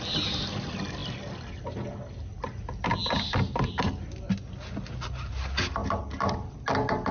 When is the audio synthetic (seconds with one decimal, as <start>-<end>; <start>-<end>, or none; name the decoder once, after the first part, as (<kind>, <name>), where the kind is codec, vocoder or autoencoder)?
none